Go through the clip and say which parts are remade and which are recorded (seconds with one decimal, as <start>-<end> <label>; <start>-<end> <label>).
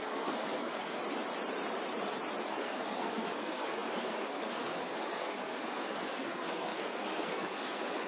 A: 0.0-1.0 remade; 1.0-2.5 recorded; 2.5-8.1 remade